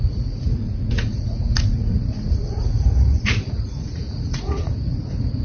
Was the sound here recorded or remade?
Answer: remade